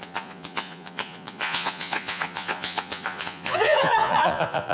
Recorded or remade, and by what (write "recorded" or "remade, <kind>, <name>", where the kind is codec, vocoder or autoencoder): remade, vocoder, Vocos